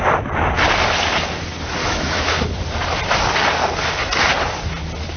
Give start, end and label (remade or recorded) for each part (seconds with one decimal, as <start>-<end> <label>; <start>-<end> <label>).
0.0-1.8 recorded; 1.8-2.3 remade; 2.3-5.2 recorded